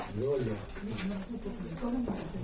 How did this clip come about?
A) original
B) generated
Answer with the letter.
A